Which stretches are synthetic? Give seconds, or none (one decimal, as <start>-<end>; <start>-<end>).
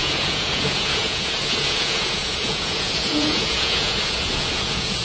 0.0-5.0